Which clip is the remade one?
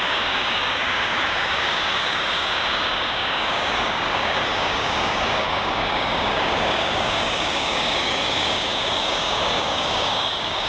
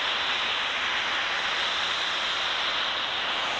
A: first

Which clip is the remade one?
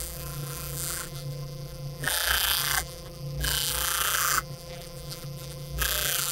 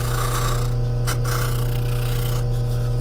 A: first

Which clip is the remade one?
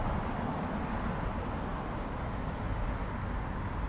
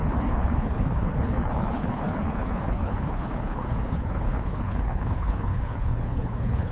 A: second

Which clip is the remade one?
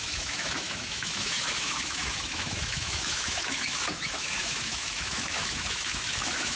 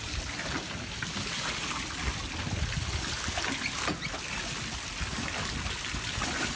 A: first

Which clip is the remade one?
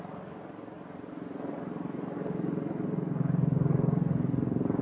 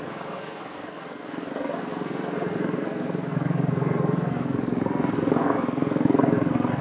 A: second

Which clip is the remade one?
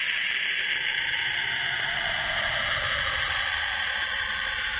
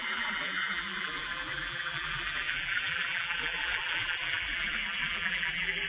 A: second